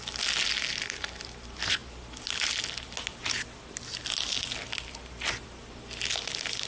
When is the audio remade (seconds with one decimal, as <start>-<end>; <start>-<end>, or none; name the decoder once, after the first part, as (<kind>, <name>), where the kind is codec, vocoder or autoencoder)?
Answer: none